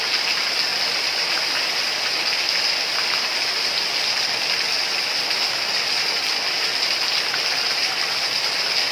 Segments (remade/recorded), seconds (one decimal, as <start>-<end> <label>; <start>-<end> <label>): 0.0-8.9 recorded